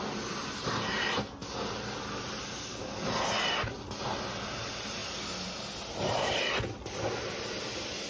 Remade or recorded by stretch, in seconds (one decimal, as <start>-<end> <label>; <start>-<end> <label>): 0.0-8.1 recorded